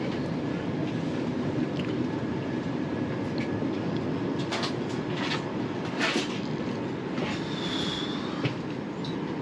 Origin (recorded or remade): recorded